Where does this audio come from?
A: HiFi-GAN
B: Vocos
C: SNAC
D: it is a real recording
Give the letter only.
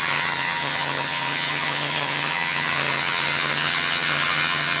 A